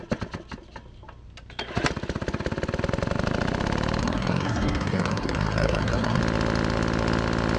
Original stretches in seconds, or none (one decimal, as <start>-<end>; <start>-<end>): 0.0-4.0; 6.2-7.6